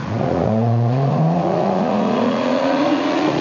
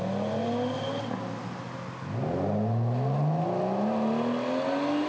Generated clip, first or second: first